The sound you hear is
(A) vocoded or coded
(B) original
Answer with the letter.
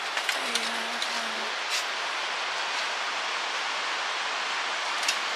B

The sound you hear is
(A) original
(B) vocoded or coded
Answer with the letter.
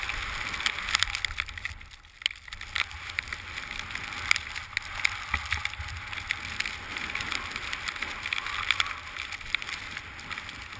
A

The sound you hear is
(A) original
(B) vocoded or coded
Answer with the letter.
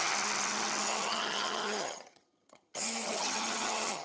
B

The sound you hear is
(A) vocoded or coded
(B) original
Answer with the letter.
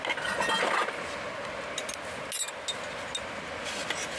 B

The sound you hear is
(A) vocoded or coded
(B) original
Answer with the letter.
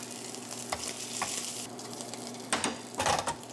B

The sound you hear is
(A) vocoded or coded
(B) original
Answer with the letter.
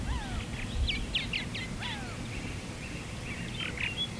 B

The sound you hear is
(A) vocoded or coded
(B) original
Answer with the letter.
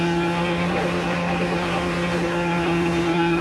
A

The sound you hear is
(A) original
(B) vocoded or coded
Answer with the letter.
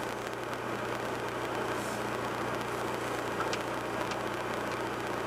A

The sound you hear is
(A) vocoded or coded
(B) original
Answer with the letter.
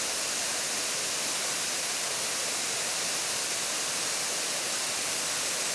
B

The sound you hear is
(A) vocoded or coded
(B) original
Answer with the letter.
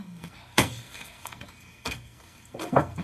A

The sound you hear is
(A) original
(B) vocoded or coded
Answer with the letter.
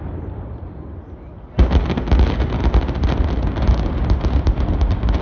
A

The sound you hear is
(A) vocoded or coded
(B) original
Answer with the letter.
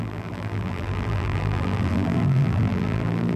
A